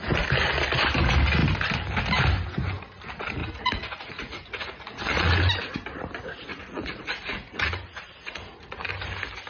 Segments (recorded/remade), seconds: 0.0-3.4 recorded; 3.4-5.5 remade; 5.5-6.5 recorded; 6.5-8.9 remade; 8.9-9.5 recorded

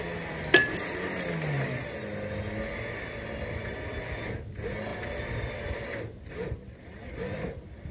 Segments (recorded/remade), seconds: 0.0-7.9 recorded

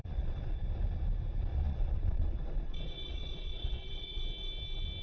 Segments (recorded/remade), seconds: 0.0-0.6 remade; 0.6-1.5 recorded; 1.5-4.2 remade; 4.2-5.0 recorded